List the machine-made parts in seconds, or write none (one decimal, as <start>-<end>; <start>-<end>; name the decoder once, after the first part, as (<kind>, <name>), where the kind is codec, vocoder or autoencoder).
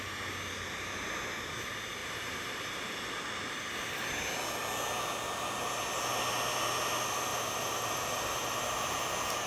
2.0-3.3 (vocoder, BigVGAN v2); 7.3-8.8